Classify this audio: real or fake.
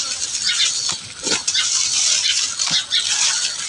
real